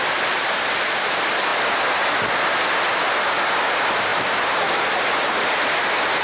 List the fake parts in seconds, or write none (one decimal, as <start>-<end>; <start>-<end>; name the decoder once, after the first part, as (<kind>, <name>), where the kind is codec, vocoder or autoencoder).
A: none